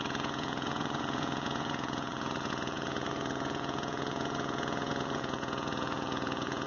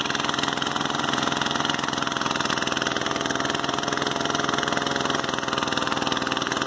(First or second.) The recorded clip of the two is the second